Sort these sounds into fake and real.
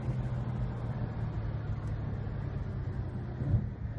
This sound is real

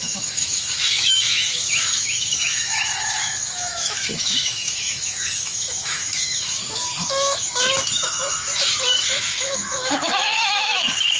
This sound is fake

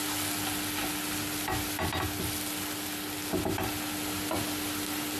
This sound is real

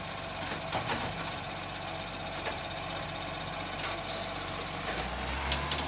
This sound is real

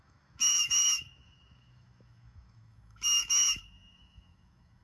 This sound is fake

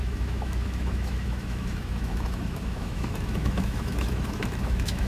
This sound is fake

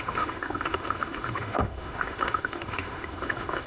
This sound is fake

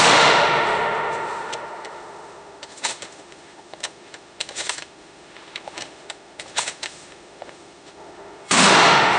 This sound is fake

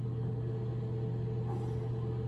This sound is real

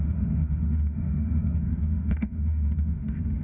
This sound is fake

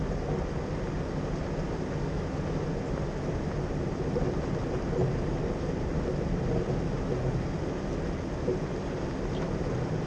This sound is real